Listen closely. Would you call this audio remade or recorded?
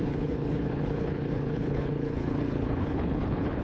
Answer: remade